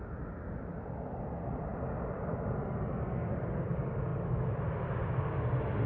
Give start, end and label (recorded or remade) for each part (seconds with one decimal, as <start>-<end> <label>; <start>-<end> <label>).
0.0-5.9 recorded

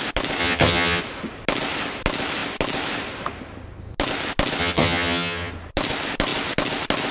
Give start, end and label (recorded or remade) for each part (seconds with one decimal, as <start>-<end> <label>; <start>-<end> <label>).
0.0-0.4 recorded; 0.4-1.0 remade; 1.0-4.6 recorded; 4.6-5.5 remade; 5.5-7.1 recorded

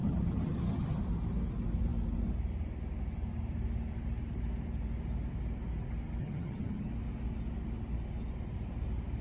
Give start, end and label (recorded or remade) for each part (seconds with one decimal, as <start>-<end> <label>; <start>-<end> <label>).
0.0-1.0 remade; 1.0-6.2 recorded; 6.2-6.9 remade; 6.9-9.2 recorded

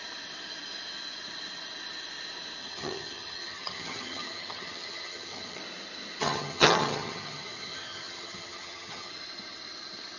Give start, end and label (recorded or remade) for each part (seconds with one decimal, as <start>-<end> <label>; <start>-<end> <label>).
0.0-2.6 recorded; 2.6-5.6 remade; 5.6-6.2 recorded; 6.2-9.1 remade; 9.1-10.2 recorded

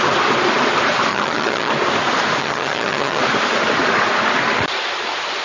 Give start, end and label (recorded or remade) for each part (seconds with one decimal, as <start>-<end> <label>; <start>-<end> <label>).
0.0-1.1 recorded; 1.1-1.7 remade; 1.7-2.4 recorded; 2.4-3.2 remade; 3.2-5.4 recorded

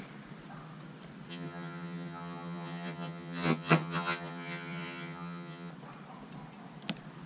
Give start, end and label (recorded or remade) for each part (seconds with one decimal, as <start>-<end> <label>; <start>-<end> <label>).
0.0-1.3 recorded; 1.3-5.7 remade; 5.7-7.3 recorded

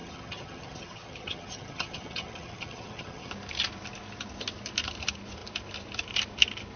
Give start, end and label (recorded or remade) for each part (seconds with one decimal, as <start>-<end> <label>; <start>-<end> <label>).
0.0-3.3 remade; 3.3-6.8 recorded

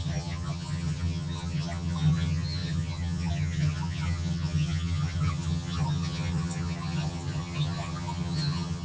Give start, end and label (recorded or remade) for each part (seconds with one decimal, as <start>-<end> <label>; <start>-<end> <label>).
0.0-8.8 remade